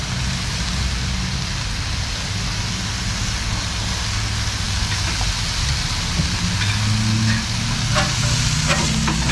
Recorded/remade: recorded